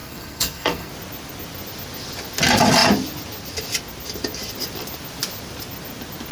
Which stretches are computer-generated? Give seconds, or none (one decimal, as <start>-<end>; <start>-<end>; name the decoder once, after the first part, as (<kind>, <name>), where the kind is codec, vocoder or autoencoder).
0.0-0.9 (codec, SNAC)

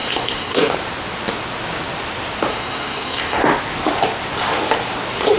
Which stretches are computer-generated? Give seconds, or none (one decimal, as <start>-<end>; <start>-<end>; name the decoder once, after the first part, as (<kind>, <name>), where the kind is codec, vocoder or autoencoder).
0.0-0.6 (codec, SNAC); 2.5-3.4